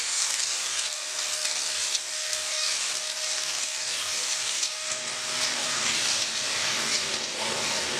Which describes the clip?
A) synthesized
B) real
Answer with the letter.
A